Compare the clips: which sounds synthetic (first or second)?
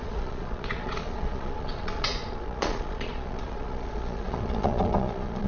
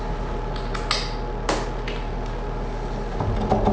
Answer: first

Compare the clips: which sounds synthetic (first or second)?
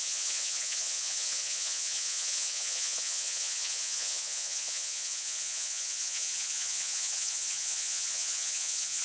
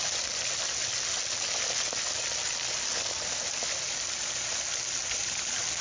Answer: first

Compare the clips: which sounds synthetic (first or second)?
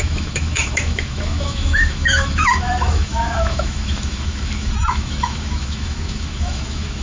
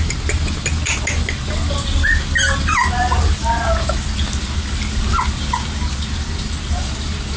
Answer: first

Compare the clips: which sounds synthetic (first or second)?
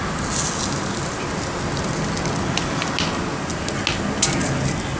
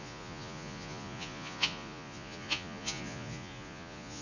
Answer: second